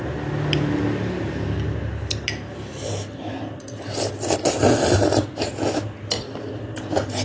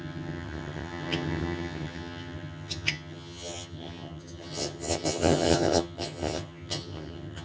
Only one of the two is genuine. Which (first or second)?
first